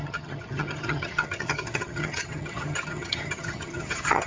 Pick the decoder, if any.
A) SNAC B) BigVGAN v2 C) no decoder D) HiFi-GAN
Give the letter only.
D